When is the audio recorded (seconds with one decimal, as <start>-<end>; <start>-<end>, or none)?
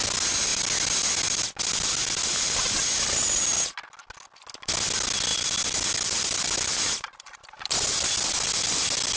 0.0-0.5; 3.4-5.3; 8.3-9.2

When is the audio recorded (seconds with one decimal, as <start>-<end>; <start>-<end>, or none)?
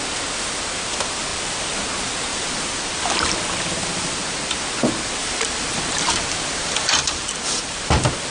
0.0-2.3; 2.9-5.2; 7.9-8.3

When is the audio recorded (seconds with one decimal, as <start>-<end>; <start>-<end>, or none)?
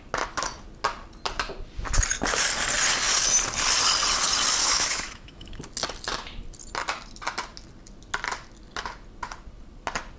0.0-4.6; 5.6-10.2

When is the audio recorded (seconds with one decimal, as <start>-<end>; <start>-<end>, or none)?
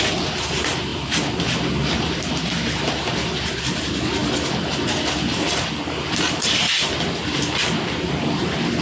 0.0-8.8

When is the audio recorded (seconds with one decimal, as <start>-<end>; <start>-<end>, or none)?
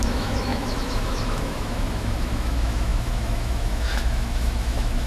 none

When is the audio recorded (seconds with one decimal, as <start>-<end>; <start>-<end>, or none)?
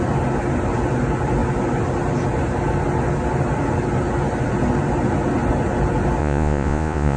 0.0-6.2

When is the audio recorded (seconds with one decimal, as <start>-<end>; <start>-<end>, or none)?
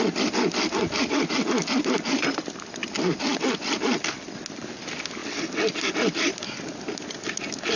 0.0-2.8; 4.1-7.8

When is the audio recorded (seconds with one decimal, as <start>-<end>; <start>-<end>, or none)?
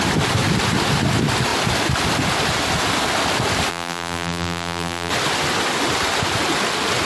0.0-3.7; 5.1-7.0